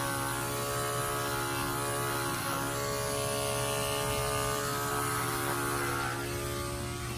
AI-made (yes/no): no